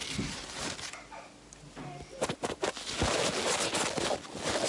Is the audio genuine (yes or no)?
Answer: yes